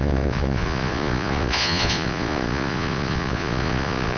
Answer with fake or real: fake